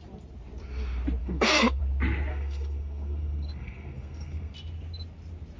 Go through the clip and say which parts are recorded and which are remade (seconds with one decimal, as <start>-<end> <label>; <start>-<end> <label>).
0.0-1.2 recorded; 1.2-1.8 remade; 1.8-2.3 recorded; 2.3-4.5 remade; 4.5-5.6 recorded